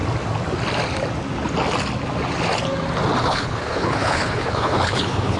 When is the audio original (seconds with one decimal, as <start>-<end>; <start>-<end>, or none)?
0.0-3.2